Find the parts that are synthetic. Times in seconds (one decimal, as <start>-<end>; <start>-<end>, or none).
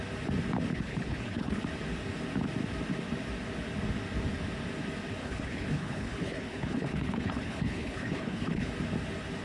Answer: 0.7-1.6; 5.2-8.7